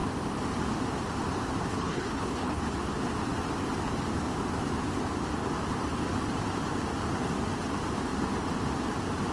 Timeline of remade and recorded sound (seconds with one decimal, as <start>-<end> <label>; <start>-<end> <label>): 0.0-1.7 recorded; 1.7-2.6 remade; 2.6-9.3 recorded